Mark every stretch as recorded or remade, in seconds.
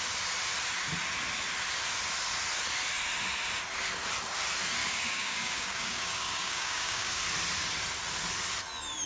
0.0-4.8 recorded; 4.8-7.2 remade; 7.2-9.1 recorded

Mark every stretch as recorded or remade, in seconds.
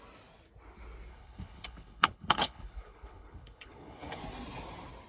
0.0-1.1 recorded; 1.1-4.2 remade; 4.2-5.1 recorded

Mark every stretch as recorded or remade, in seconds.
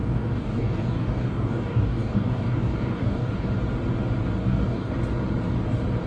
0.0-3.5 remade; 3.5-4.4 recorded; 4.4-4.9 remade; 4.9-6.1 recorded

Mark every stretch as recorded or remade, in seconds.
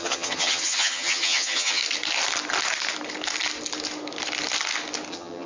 0.0-1.8 remade; 1.8-5.1 recorded; 5.1-5.5 remade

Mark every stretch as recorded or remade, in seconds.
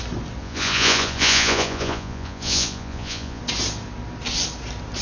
0.0-0.4 recorded; 0.4-3.4 remade; 3.4-5.0 recorded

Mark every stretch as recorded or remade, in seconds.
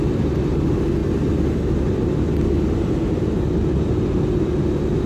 0.0-5.1 recorded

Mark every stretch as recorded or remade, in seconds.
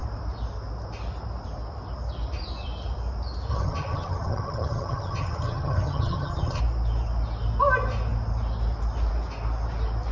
0.0-3.5 recorded; 3.5-6.6 remade; 6.6-10.1 recorded